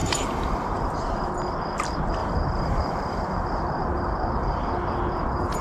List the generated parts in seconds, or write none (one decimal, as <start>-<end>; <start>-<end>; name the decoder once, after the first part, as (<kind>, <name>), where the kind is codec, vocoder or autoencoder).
0.0-0.8 (vocoder, BigVGAN v2); 2.2-4.6